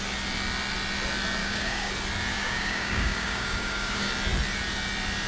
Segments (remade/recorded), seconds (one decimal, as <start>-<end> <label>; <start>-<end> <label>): 0.0-1.4 recorded; 1.4-1.9 remade; 1.9-2.3 recorded; 2.3-4.1 remade; 4.1-5.3 recorded